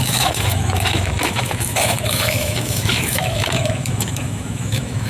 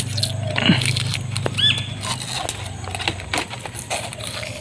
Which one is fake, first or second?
first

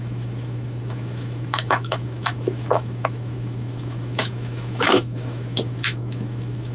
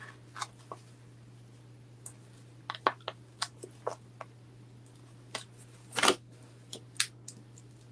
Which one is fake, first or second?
first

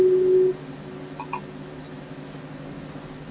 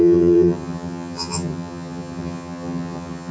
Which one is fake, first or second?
second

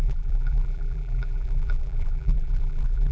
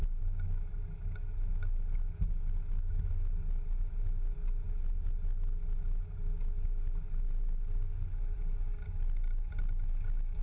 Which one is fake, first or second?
first